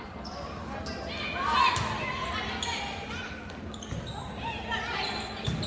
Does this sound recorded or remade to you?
recorded